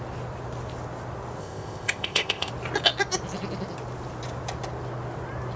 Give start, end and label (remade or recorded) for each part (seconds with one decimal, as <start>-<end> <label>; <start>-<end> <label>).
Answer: 0.0-1.4 recorded; 1.4-2.5 remade; 2.5-5.6 recorded